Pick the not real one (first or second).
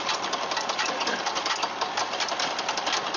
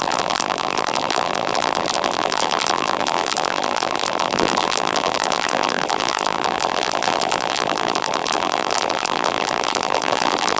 second